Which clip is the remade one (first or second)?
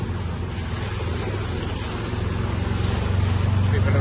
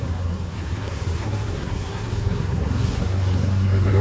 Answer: second